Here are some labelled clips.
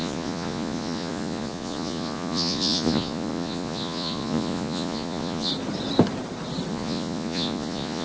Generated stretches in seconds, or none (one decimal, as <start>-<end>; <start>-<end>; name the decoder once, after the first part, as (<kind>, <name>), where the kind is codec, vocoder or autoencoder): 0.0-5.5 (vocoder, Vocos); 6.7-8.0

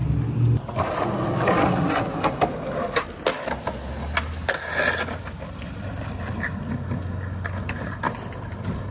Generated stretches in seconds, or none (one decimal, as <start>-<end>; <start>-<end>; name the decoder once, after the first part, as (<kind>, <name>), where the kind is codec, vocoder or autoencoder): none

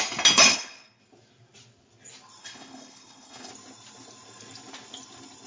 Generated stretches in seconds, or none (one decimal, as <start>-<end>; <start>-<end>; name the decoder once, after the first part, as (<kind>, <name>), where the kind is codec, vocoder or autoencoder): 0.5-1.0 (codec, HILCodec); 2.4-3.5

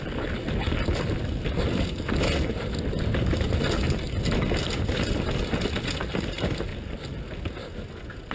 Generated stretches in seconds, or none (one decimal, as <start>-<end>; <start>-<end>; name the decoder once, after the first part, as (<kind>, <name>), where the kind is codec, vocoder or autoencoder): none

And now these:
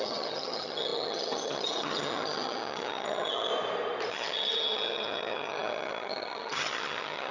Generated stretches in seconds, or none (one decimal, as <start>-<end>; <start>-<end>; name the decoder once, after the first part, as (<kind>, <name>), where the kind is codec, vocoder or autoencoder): 0.0-3.5 (vocoder, HiFi-GAN); 4.1-7.3

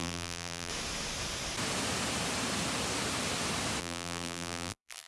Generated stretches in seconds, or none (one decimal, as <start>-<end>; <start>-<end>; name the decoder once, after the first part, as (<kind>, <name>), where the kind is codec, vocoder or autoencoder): 0.0-0.7 (vocoder, BigVGAN v2); 3.8-5.1

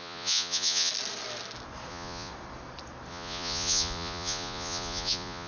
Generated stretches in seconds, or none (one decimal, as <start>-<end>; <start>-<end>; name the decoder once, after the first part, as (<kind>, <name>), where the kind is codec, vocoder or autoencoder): 0.0-0.9 (vocoder, Vocos); 1.9-2.3; 3.1-5.5